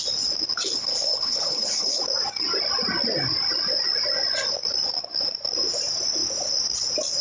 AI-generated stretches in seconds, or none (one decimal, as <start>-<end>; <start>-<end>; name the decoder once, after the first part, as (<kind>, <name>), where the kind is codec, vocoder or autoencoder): 0.8-2.0 (codec, HILCodec)